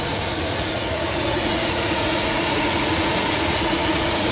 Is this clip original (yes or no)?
no